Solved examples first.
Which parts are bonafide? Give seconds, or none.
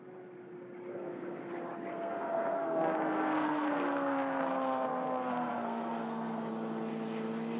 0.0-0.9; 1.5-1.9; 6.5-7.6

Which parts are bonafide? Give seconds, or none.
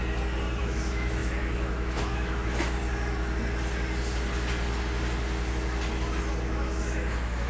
0.0-0.6; 2.8-6.3